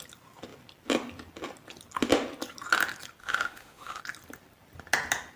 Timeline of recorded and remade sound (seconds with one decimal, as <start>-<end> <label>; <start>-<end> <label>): 0.0-3.2 recorded; 3.2-4.0 remade; 4.0-5.4 recorded